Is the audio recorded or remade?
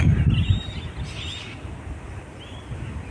recorded